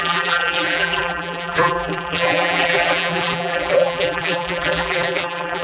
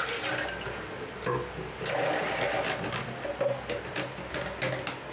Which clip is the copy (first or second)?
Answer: first